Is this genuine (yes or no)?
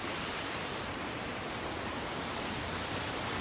no